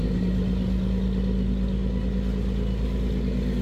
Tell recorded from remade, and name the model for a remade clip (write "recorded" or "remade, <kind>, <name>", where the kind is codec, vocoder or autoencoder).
recorded